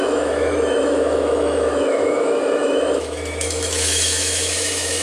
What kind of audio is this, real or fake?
fake